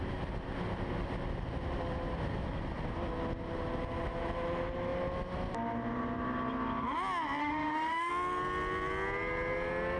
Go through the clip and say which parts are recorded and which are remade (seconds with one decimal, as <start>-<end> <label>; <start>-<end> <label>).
0.0-7.4 recorded; 7.4-8.1 remade; 8.1-10.0 recorded